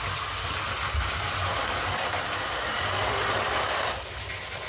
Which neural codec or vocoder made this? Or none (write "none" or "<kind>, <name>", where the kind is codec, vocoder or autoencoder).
none